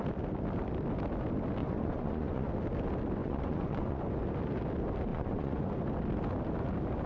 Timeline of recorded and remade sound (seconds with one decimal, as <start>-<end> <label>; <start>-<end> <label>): 0.0-1.6 recorded; 1.6-2.5 remade; 2.5-3.2 recorded; 3.2-4.0 remade; 4.0-5.1 recorded; 5.1-5.7 remade; 5.7-7.1 recorded